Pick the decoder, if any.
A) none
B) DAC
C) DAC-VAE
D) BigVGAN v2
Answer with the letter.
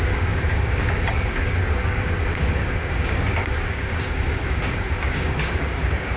B